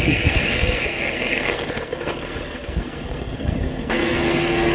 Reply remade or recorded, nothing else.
remade